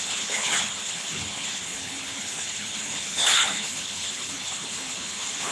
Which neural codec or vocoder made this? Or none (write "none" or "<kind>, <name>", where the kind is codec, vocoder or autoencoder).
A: codec, HILCodec